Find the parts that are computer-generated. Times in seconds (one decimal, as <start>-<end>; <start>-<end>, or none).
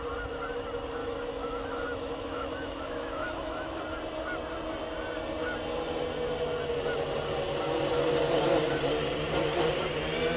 1.0-3.8